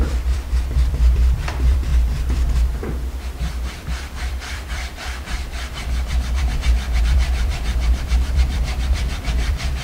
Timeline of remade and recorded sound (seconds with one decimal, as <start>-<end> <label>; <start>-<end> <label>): 0.0-9.8 remade